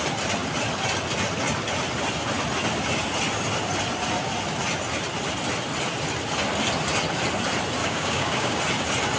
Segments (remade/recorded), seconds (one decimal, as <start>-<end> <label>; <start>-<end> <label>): 0.0-7.8 recorded; 7.8-8.6 remade; 8.6-9.2 recorded